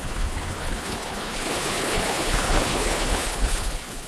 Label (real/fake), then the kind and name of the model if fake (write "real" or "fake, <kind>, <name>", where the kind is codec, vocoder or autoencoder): fake, codec, HILCodec